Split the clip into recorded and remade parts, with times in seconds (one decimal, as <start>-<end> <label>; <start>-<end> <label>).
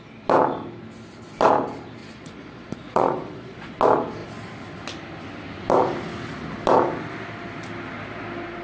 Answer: 0.0-2.0 recorded; 2.0-3.7 remade; 3.7-8.6 recorded